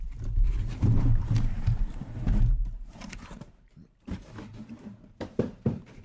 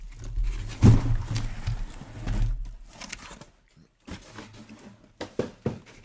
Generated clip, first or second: first